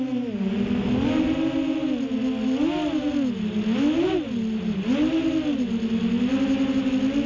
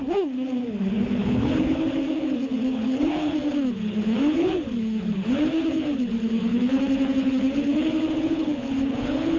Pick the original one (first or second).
first